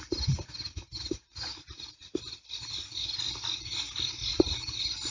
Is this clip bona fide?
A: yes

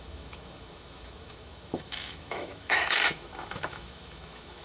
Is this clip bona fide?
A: no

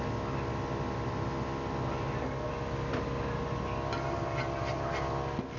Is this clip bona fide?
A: yes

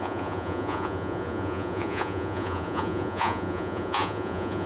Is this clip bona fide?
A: no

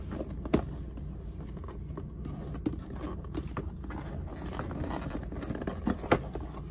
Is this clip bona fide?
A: yes